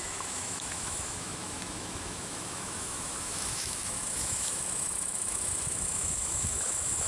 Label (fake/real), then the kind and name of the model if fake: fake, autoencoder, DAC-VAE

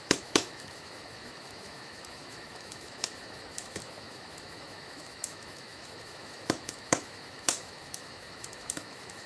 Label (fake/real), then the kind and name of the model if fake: fake, autoencoder, DAC-VAE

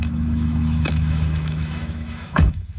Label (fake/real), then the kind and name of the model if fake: fake, autoencoder, DAC-VAE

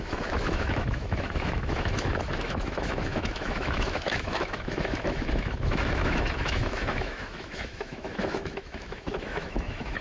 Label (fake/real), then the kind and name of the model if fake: fake, autoencoder, DAC-VAE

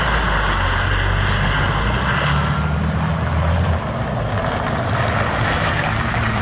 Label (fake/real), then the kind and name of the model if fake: real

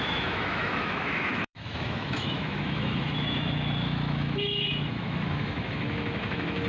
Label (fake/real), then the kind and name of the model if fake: fake, autoencoder, DAC-VAE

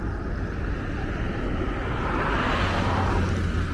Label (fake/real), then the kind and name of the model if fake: real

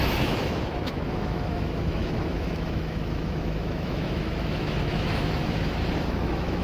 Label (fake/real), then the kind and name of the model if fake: fake, autoencoder, DAC-VAE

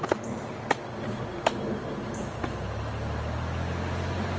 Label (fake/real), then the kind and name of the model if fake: real